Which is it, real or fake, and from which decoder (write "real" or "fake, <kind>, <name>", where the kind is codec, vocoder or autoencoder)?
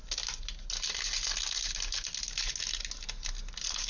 real